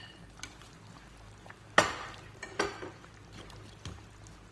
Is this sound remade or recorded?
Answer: recorded